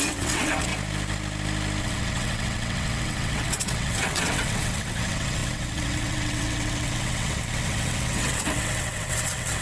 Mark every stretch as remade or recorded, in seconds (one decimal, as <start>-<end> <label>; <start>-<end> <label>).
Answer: 0.0-0.7 remade; 0.7-1.8 recorded; 1.8-9.6 remade